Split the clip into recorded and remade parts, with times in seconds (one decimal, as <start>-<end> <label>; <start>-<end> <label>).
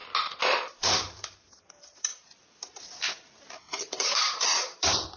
0.0-0.7 recorded; 0.7-2.1 remade; 2.1-3.7 recorded; 3.7-5.2 remade